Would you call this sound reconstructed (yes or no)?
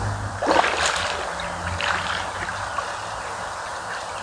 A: no